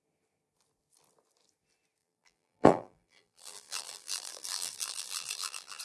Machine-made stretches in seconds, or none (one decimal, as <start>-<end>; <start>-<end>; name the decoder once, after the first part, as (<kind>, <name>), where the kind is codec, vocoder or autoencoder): 2.0-5.8 (vocoder, BigVGAN v2)